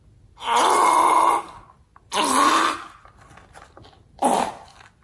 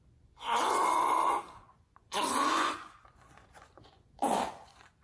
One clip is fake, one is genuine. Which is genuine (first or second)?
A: first